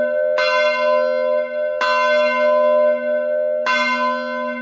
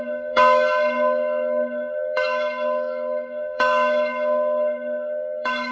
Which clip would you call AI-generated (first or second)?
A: second